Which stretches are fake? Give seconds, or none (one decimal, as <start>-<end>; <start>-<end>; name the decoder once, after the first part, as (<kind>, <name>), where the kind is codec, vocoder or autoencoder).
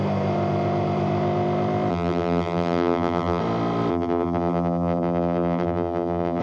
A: 1.9-3.4 (vocoder, BigVGAN v2); 3.9-6.4